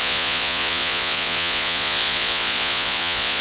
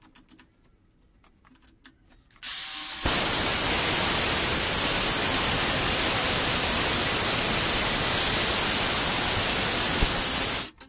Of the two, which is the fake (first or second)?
first